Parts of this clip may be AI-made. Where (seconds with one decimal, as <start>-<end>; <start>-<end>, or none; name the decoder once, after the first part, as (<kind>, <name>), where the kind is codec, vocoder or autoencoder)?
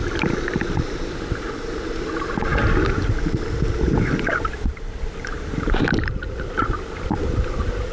0.0-2.5 (vocoder, BigVGAN v2); 3.6-7.9